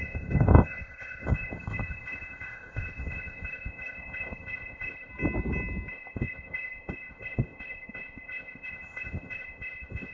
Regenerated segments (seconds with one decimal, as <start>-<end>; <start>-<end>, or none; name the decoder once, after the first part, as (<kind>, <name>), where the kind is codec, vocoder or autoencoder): 0.0-5.1 (codec, ZipCodec); 5.9-10.1